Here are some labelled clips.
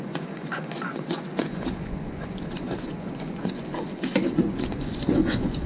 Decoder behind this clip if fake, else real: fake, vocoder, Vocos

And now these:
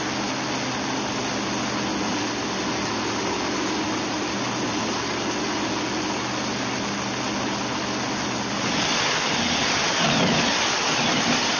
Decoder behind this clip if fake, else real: real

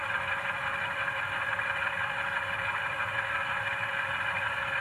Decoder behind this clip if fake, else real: real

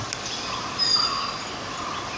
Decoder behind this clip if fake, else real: real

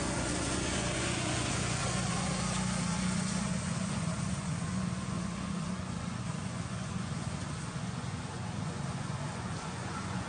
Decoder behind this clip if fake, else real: fake, vocoder, Vocos